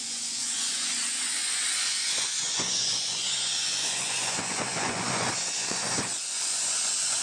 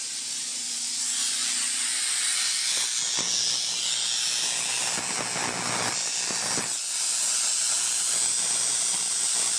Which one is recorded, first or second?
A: second